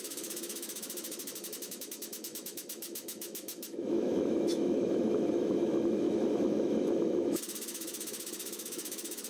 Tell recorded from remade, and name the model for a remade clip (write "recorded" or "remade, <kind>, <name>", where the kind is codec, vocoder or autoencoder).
remade, autoencoder, DAC-VAE